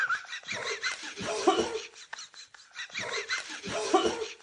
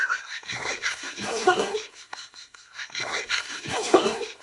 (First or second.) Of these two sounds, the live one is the first